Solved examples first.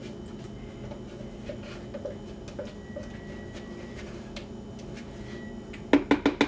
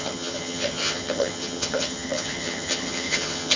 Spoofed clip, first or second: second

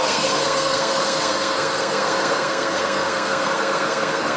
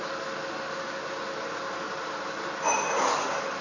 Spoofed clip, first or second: first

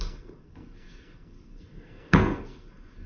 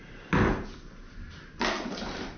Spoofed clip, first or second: first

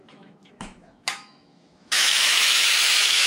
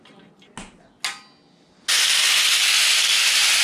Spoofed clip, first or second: first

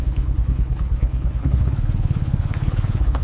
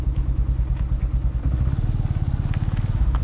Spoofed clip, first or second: first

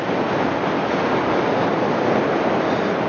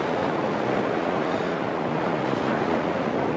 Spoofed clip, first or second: second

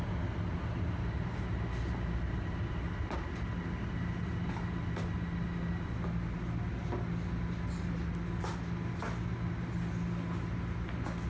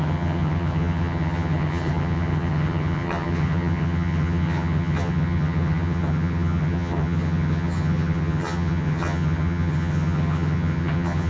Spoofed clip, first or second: second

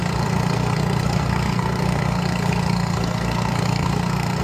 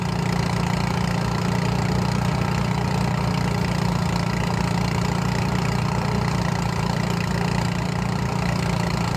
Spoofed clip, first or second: first